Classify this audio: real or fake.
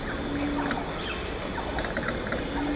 real